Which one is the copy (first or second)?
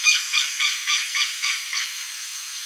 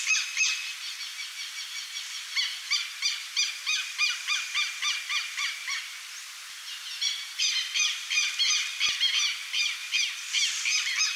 first